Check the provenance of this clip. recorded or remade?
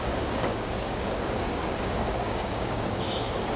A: remade